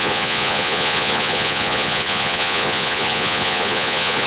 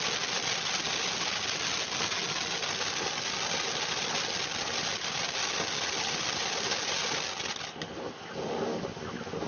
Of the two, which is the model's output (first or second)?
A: first